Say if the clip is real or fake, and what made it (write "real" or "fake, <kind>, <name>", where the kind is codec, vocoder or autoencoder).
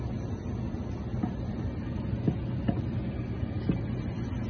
real